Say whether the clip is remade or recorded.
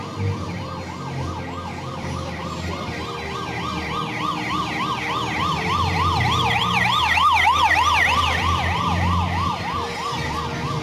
recorded